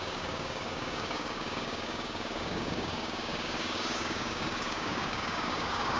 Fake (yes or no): yes